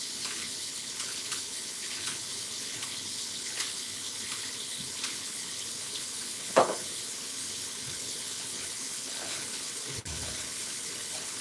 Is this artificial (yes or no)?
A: yes